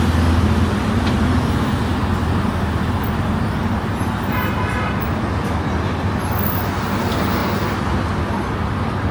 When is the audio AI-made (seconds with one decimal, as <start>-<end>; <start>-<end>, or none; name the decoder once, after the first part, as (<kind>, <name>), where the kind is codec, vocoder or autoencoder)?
1.9-4.6 (vocoder, BigVGAN v2)